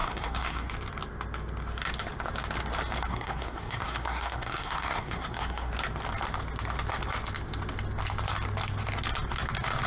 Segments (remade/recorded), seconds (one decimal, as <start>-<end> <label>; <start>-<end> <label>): 0.0-0.7 remade; 0.7-3.1 recorded; 3.1-5.7 remade; 5.7-9.9 recorded

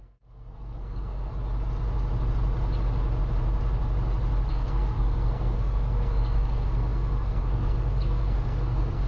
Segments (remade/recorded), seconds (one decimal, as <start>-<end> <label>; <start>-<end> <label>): 0.0-1.3 remade; 1.3-4.5 recorded; 4.5-9.1 remade

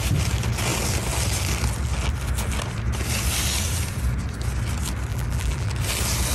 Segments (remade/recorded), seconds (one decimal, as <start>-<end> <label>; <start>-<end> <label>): 0.0-5.1 recorded; 5.1-5.7 remade; 5.7-6.3 recorded

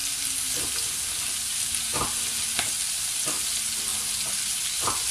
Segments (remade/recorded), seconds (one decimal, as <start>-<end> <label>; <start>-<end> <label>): 0.0-5.1 recorded

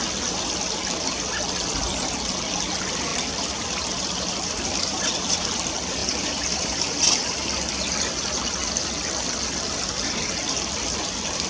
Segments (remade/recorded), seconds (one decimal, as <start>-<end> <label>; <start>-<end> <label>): 0.0-3.1 recorded; 3.1-5.2 remade; 5.2-6.0 recorded; 6.0-7.6 remade; 7.6-11.5 recorded